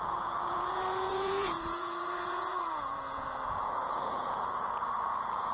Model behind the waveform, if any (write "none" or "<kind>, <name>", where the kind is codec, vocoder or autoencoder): vocoder, Vocos